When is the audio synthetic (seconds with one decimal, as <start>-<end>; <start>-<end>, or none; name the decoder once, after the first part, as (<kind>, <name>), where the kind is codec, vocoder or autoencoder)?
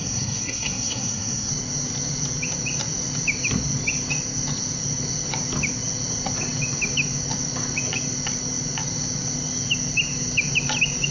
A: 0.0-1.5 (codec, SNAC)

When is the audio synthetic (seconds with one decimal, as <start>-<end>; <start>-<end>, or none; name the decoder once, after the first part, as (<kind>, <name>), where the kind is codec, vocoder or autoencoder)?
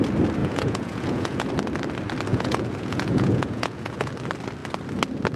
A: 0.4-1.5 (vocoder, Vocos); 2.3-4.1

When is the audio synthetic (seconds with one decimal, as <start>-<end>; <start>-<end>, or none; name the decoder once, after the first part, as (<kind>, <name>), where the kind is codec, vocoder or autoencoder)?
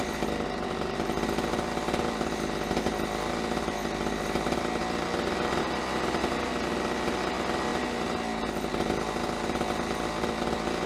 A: none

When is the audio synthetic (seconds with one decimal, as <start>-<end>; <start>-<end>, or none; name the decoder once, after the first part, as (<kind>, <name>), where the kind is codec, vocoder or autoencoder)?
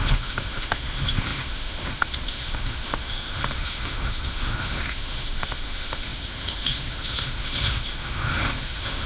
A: 0.0-9.1 (autoencoder, DAC-VAE)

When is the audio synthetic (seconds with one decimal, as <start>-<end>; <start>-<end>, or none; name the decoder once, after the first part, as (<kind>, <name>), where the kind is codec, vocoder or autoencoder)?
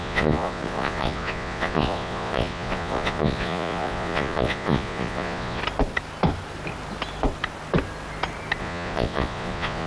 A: 0.0-5.6 (vocoder, Vocos); 8.6-9.9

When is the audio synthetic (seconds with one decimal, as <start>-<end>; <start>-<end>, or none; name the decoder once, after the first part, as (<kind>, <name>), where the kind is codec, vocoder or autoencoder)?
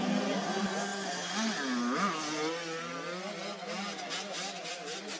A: none